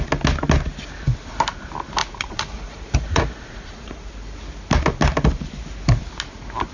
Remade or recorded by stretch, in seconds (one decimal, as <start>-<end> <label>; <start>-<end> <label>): 0.0-2.0 recorded; 2.0-4.1 remade; 4.1-6.7 recorded